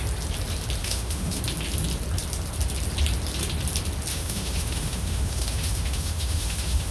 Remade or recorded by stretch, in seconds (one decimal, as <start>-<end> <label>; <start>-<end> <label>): 0.0-0.8 recorded; 0.8-1.4 remade; 1.4-4.1 recorded; 4.1-6.9 remade